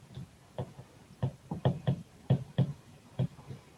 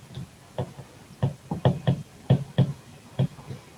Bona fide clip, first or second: second